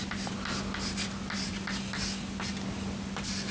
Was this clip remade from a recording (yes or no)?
no